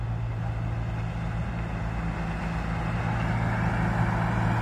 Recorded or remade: recorded